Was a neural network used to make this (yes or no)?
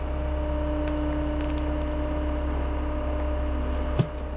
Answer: no